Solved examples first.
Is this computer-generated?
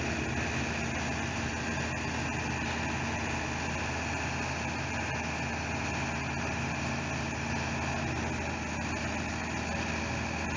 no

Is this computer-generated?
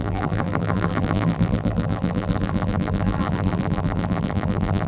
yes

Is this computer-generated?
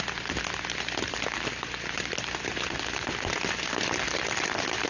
yes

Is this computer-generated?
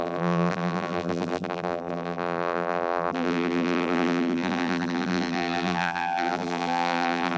yes